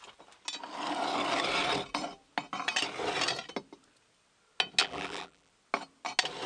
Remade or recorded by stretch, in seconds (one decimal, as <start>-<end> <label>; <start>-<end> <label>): 0.0-4.8 recorded; 4.8-5.5 remade; 5.5-6.5 recorded